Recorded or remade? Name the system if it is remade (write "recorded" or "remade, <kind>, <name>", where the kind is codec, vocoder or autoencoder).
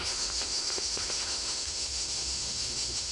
remade, autoencoder, DAC-VAE